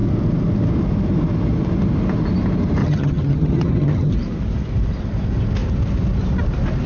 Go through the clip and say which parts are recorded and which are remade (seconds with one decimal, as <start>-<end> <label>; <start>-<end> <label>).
0.0-2.8 recorded; 2.8-4.1 remade; 4.1-6.9 recorded